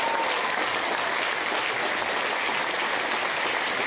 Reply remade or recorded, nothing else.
recorded